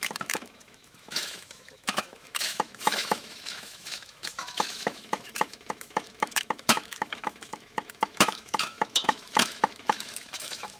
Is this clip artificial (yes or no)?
yes